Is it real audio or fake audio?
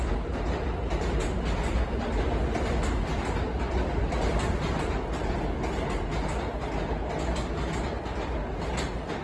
real